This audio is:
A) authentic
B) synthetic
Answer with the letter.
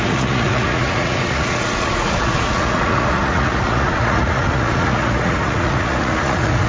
B